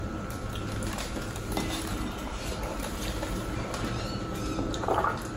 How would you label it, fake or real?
fake